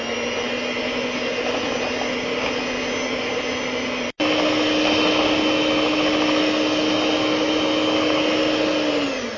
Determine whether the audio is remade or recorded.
recorded